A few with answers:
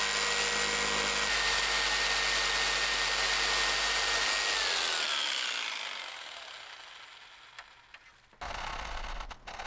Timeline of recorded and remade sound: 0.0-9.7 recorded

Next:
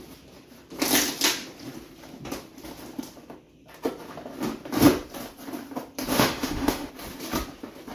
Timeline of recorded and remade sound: 0.0-6.1 recorded; 6.1-6.9 remade; 6.9-7.9 recorded

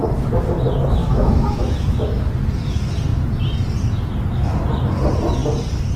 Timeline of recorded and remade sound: 0.0-1.0 recorded; 1.0-2.1 remade; 2.1-6.0 recorded

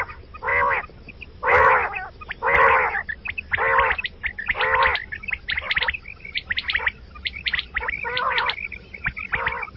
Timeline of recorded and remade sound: 0.0-9.8 recorded

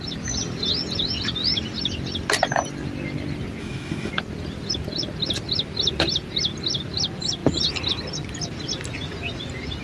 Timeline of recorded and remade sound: 0.0-3.6 recorded; 3.6-4.1 remade; 4.1-9.8 recorded

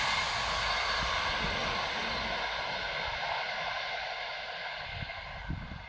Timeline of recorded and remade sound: 0.0-5.9 recorded

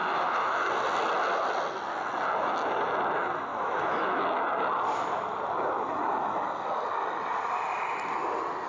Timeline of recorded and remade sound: 0.0-0.7 remade; 0.7-3.5 recorded; 3.5-4.2 remade; 4.2-8.7 recorded